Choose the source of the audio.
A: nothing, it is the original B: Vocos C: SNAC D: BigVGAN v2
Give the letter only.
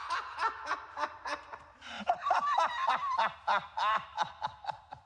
D